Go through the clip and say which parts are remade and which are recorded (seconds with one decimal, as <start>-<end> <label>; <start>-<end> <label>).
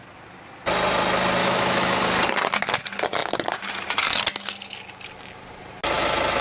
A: 0.0-1.4 recorded; 1.4-2.0 remade; 2.0-6.4 recorded